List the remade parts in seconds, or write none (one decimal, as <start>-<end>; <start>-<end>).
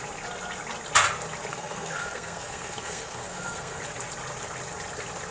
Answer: 1.5-3.8